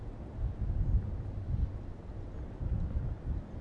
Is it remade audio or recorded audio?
recorded